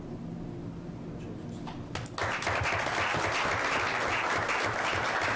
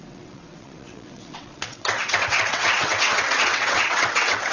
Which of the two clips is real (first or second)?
first